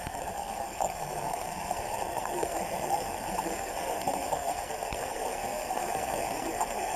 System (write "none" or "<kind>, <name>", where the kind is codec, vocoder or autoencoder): codec, SNAC